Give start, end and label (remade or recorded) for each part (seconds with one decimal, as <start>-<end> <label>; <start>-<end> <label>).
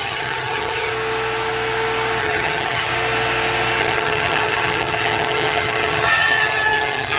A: 0.0-0.9 remade; 0.9-2.2 recorded; 2.2-2.9 remade; 2.9-3.8 recorded; 3.8-7.2 remade